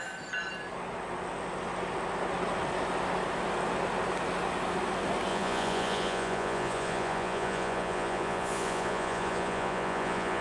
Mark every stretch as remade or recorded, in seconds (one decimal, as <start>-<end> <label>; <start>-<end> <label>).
0.0-5.3 recorded; 5.3-10.4 remade